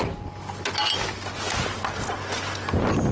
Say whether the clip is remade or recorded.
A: recorded